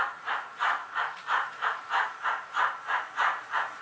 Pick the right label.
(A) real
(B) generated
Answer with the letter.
B